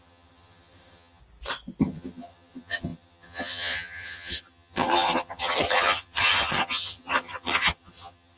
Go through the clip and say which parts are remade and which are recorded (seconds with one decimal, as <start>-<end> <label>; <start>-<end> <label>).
0.0-1.2 remade; 1.2-1.8 recorded; 1.8-8.4 remade